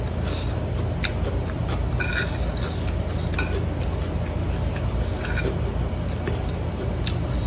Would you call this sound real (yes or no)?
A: yes